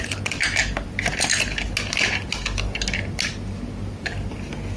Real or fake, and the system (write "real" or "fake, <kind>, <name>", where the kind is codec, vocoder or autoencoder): real